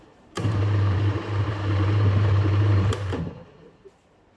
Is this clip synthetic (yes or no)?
yes